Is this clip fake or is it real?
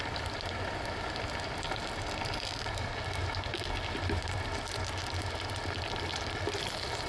real